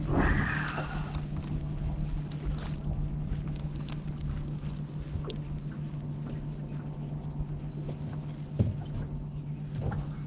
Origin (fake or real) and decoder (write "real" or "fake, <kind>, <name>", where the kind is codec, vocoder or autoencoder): real